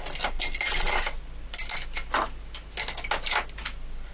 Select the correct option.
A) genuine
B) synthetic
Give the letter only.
A